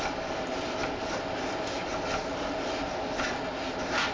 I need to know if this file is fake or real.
real